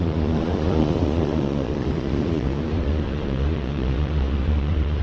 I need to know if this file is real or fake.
fake